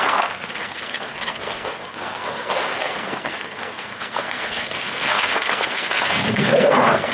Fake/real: fake